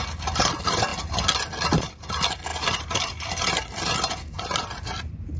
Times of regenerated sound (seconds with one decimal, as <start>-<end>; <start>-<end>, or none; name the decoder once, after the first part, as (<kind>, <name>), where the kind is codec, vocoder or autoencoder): none

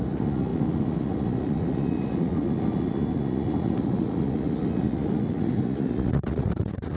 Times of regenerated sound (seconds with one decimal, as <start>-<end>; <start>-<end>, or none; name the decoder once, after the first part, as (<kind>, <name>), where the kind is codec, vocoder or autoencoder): 0.0-7.0 (vocoder, Vocos)